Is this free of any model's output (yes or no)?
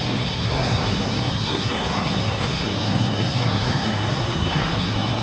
no